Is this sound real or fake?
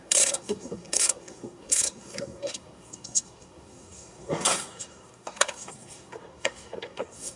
fake